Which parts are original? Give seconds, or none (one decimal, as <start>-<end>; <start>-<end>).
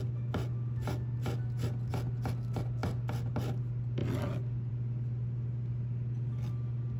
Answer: 0.0-7.0